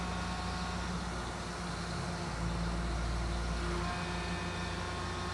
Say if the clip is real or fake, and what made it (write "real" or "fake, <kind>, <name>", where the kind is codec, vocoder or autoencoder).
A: real